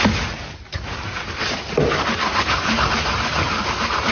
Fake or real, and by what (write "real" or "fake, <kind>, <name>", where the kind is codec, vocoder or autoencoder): real